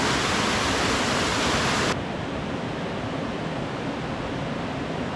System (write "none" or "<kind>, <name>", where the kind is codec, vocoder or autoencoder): none